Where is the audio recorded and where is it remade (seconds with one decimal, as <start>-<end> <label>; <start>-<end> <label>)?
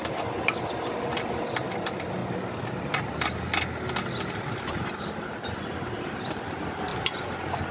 0.0-2.2 remade; 2.2-4.4 recorded; 4.4-6.9 remade; 6.9-7.7 recorded